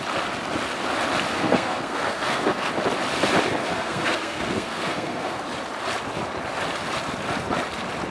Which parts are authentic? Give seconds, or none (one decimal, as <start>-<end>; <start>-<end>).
0.0-1.3; 2.7-3.6; 5.4-8.1

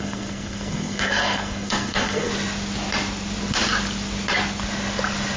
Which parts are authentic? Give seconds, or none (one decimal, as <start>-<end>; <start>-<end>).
2.3-5.4

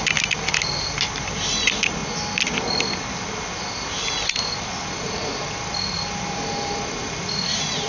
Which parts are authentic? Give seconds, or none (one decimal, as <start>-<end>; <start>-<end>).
0.0-7.9